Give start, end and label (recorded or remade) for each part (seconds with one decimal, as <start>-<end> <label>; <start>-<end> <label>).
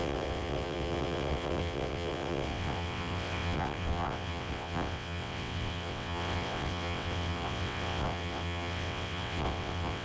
0.0-10.0 remade